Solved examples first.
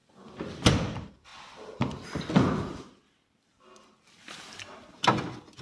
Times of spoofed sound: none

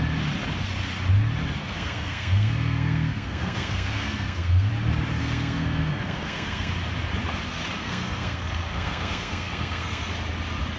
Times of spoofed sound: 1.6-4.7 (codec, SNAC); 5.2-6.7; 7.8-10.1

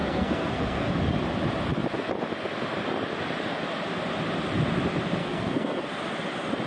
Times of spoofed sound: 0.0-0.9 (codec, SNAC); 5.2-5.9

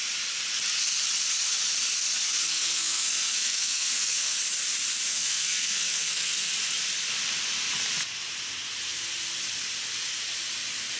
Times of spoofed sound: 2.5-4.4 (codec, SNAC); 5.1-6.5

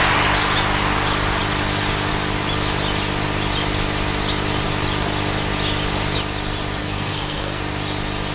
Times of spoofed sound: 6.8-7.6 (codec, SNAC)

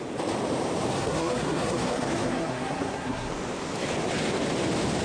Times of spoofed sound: 0.9-3.3 (codec, SNAC)

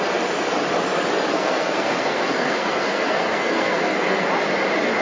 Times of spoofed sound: 1.3-4.3 (codec, SNAC)

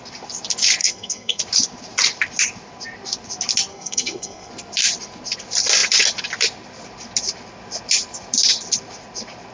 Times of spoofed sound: 0.8-1.4 (codec, SNAC); 3.7-4.5